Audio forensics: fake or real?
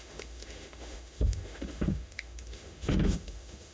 fake